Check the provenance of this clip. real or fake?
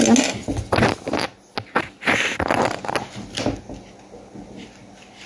real